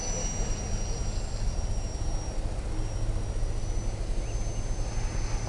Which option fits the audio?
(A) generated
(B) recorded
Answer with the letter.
B